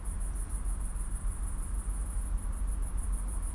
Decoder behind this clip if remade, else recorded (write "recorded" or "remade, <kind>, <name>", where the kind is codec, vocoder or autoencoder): recorded